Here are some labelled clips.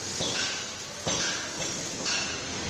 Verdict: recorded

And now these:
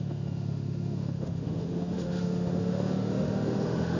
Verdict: remade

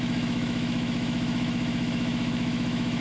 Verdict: remade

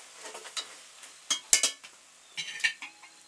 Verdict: recorded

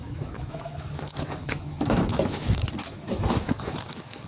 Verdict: remade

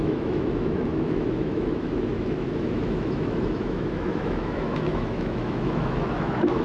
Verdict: remade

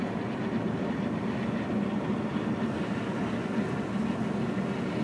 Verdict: recorded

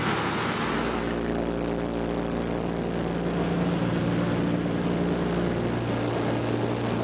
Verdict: recorded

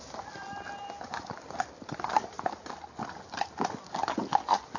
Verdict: recorded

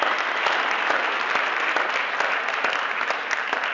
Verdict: recorded